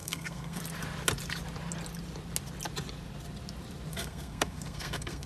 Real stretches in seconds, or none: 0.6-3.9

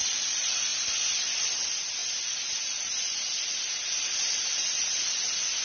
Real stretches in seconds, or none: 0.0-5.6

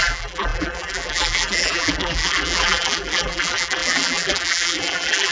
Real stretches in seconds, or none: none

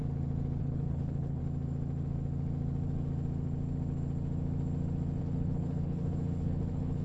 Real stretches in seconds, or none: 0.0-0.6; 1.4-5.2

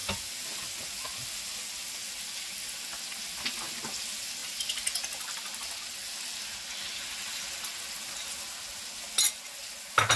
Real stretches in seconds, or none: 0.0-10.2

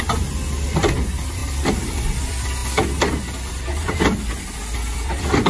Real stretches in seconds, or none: 2.6-3.5

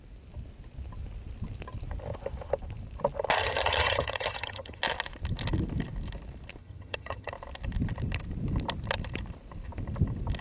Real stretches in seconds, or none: 0.0-3.4; 4.8-6.6; 7.3-10.4